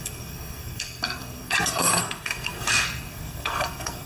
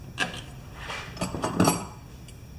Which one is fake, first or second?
first